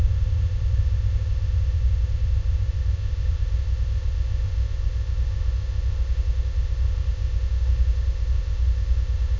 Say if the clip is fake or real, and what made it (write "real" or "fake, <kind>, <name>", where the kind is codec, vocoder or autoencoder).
fake, codec, ZipCodec